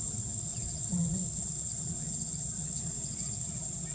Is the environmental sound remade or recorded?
remade